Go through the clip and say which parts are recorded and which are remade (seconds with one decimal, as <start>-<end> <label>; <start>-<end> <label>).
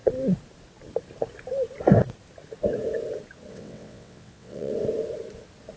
0.0-3.5 recorded; 3.5-4.7 remade; 4.7-5.8 recorded